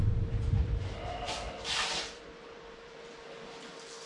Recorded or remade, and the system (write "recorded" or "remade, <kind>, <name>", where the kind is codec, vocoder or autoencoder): remade, vocoder, BigVGAN v2